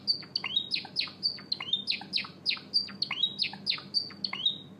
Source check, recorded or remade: recorded